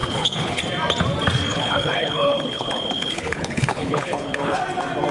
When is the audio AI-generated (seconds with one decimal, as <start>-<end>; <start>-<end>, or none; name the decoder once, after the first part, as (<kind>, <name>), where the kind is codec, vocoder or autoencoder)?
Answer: 0.0-0.6 (codec, HILCodec); 1.5-4.6